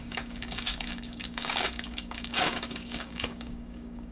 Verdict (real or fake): fake